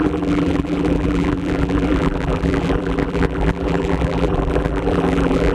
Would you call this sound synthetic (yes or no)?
yes